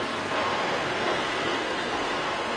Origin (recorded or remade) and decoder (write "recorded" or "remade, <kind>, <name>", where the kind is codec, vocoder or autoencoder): remade, codec, SNAC